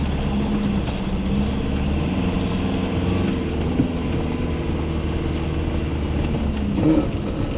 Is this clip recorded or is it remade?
recorded